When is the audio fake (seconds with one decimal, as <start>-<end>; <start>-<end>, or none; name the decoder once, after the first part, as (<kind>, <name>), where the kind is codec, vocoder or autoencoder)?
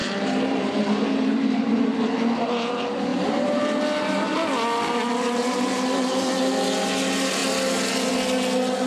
0.0-1.8 (vocoder, BigVGAN v2); 3.1-3.6